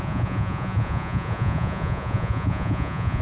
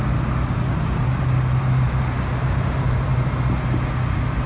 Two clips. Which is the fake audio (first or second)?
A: first